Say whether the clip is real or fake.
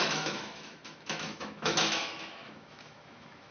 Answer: fake